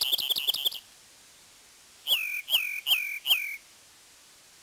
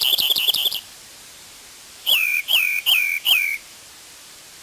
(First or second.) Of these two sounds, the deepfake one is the second